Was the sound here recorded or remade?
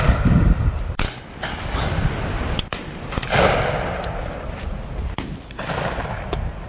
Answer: recorded